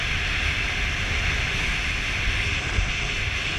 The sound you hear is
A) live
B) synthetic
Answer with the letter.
A